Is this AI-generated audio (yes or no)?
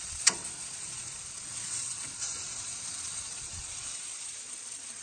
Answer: yes